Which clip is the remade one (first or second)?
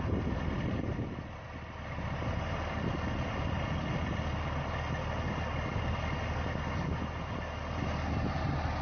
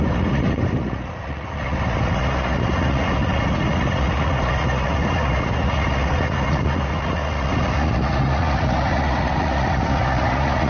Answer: second